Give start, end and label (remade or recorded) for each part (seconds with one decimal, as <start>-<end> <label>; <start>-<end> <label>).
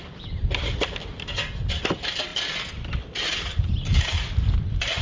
0.0-5.0 recorded